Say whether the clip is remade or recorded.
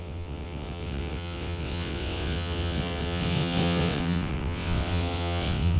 remade